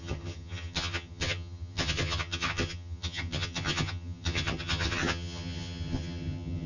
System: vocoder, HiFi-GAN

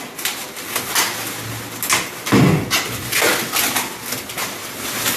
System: none